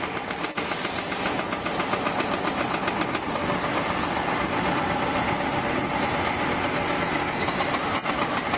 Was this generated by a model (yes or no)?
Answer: no